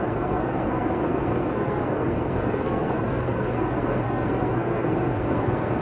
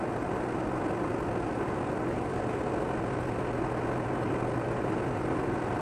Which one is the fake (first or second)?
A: first